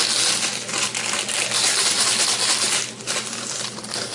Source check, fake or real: real